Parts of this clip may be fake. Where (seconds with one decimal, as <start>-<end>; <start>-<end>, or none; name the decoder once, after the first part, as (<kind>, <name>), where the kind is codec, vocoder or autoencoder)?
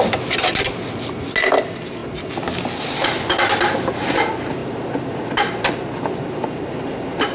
none